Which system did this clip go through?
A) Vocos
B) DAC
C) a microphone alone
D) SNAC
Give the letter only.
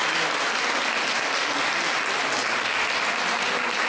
C